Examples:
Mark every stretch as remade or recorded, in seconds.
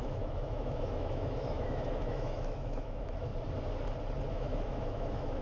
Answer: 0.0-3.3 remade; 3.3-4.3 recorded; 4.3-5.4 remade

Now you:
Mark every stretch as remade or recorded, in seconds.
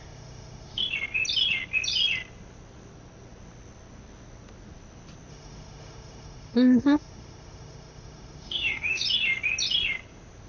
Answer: 0.0-0.8 remade; 0.8-5.3 recorded; 5.3-9.0 remade; 9.0-10.5 recorded